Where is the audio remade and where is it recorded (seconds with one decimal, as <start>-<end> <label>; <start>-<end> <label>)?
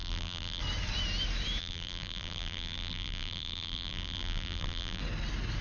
0.0-0.6 remade; 0.6-1.6 recorded; 1.6-5.0 remade; 5.0-5.6 recorded